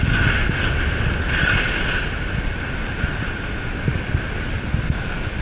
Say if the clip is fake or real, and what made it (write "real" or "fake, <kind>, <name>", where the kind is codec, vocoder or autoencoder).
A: real